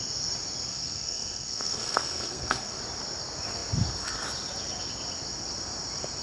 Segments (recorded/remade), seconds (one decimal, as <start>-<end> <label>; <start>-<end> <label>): 0.0-0.7 recorded; 0.7-2.8 remade; 2.8-6.2 recorded